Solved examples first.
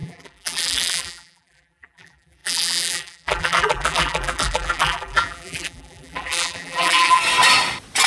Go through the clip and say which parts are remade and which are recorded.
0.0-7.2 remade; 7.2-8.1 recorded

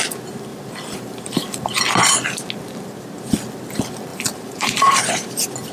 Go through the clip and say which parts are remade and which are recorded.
0.0-0.5 recorded; 0.5-1.8 remade; 1.8-4.1 recorded; 4.1-5.3 remade; 5.3-5.7 recorded

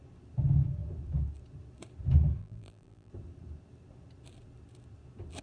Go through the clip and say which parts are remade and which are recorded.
0.0-2.4 recorded; 2.4-3.1 remade; 3.1-5.4 recorded

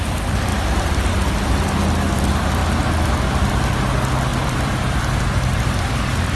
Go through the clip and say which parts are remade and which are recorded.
0.0-0.5 recorded; 0.5-1.5 remade; 1.5-4.3 recorded; 4.3-5.5 remade; 5.5-6.4 recorded

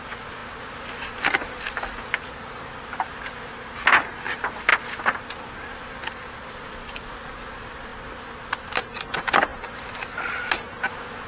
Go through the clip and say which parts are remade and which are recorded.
0.0-11.3 recorded

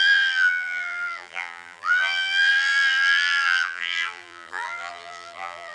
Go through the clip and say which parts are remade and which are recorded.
0.0-5.7 remade